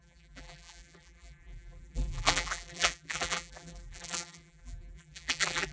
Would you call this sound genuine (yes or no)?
no